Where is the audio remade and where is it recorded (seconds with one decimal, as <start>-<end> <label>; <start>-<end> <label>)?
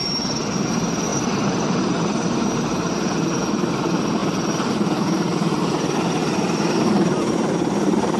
0.0-1.1 recorded; 1.1-2.6 remade; 2.6-4.2 recorded; 4.2-5.2 remade; 5.2-6.2 recorded; 6.2-6.9 remade; 6.9-8.2 recorded